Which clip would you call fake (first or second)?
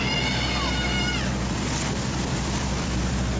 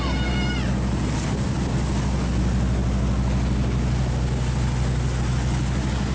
first